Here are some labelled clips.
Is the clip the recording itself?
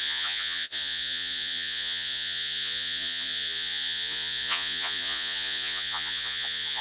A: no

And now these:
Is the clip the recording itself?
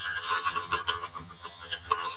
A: no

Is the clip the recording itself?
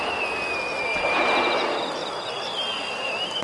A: yes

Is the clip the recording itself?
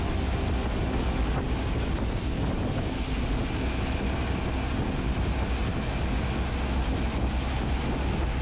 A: yes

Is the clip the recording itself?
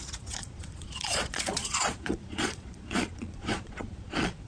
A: no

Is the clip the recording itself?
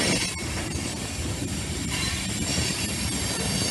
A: no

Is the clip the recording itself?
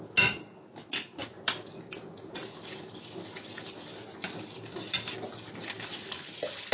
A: yes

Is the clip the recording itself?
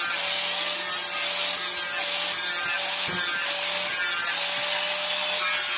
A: yes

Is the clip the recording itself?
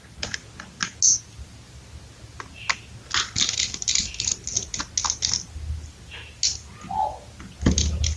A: yes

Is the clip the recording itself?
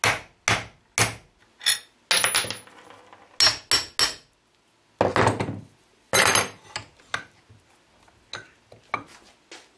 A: yes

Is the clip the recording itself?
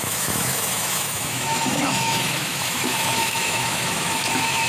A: no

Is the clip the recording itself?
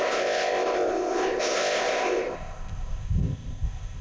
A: no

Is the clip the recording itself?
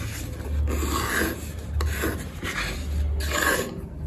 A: yes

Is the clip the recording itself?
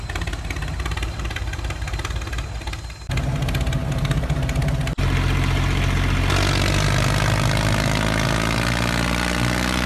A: yes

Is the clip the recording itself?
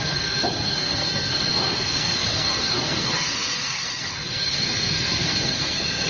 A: no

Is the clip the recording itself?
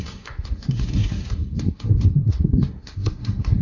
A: no